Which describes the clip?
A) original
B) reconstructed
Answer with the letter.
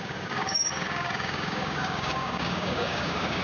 B